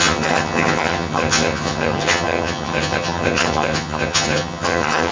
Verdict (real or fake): fake